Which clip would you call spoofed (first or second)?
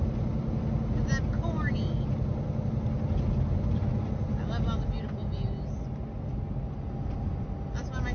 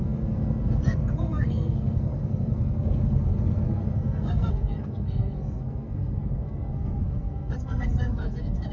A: second